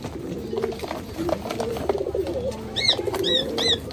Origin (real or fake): real